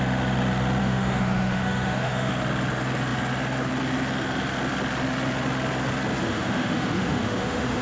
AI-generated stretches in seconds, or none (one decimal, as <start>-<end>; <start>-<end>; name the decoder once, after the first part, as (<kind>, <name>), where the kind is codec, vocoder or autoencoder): 0.8-2.3 (autoencoder, DAC-VAE); 6.2-7.8